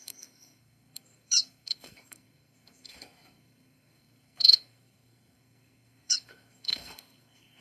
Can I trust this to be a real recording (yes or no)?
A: no